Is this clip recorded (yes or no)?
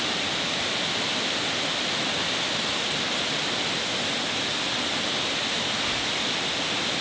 yes